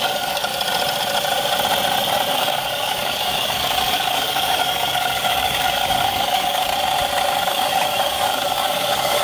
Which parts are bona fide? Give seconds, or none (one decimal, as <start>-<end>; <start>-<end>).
0.5-2.3; 6.7-7.3